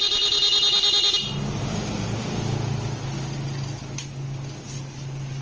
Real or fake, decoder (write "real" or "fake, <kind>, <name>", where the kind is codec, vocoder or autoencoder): real